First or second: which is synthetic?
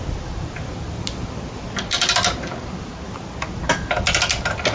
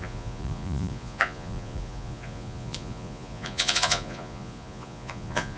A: second